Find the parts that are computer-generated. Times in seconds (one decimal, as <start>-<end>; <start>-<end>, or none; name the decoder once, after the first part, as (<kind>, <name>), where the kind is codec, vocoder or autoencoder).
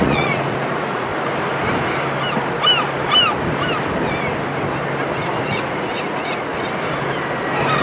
0.0-1.1 (vocoder, Vocos); 5.4-6.5